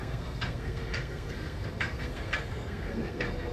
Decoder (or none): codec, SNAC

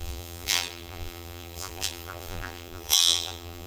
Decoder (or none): vocoder, BigVGAN v2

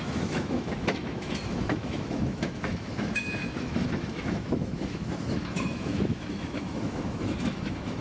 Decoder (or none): autoencoder, DAC-VAE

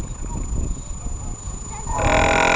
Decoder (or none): none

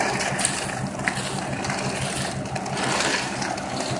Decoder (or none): none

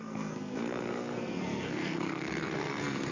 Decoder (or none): codec, SNAC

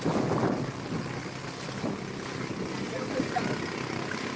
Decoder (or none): none